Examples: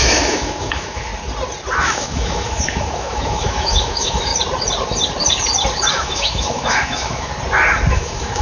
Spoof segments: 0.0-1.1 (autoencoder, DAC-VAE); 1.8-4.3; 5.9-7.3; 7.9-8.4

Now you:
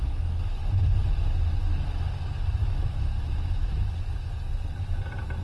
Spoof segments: 2.6-3.9 (autoencoder, DAC-VAE)

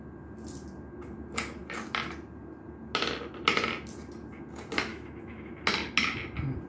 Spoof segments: 4.9-5.5 (autoencoder, DAC-VAE)

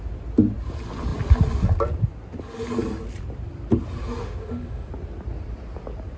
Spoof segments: 4.2-4.9 (autoencoder, DAC-VAE)

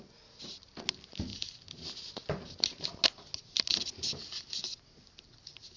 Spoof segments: none

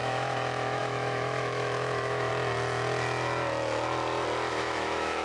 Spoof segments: 0.0-2.3 (autoencoder, DAC-VAE); 4.5-5.2

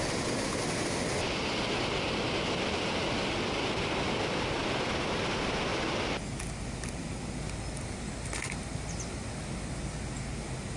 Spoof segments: none